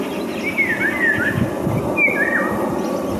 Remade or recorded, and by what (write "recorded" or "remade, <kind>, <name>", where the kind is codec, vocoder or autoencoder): recorded